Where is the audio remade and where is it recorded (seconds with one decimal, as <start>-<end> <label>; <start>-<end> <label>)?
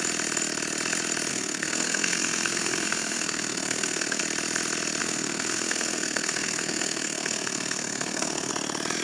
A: 0.0-1.3 recorded; 1.3-4.2 remade; 4.2-5.0 recorded; 5.0-8.5 remade; 8.5-9.0 recorded